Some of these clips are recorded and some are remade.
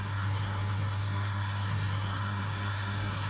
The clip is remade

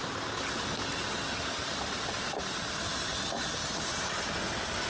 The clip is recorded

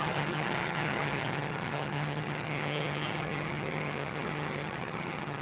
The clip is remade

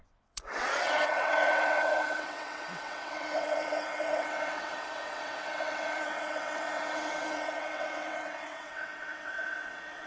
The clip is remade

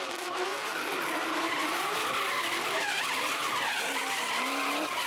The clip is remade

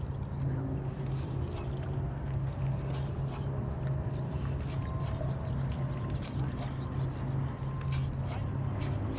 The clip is recorded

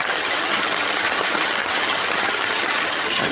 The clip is remade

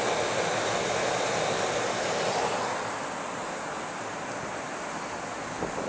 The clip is recorded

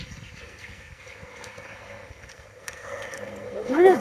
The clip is remade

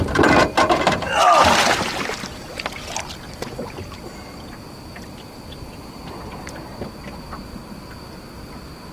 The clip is recorded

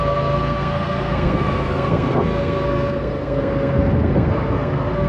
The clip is remade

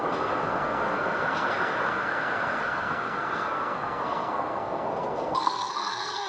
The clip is remade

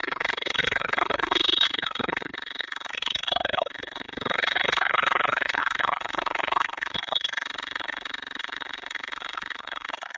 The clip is remade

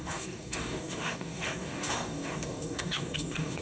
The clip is remade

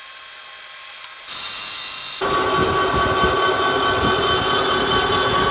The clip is recorded